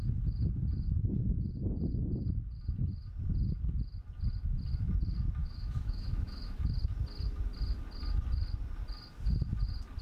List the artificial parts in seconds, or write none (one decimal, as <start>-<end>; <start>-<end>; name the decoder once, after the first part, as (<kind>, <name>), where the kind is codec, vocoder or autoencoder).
5.4-6.6 (autoencoder, DAC-VAE)